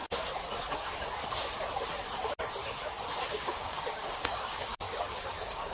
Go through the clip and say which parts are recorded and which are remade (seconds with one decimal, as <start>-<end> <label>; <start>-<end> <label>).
0.0-3.3 recorded; 3.3-5.7 remade